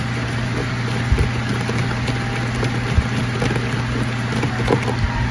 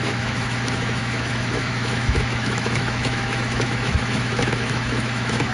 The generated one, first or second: second